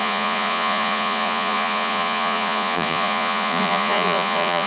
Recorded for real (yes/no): no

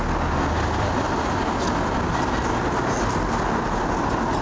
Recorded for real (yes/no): yes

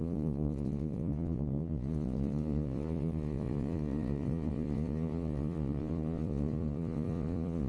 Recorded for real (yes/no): no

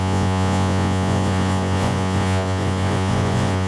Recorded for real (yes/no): no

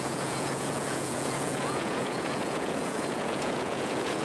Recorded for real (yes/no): no